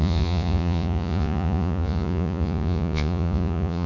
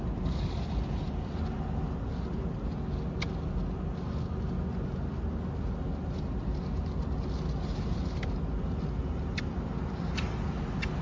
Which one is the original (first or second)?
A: second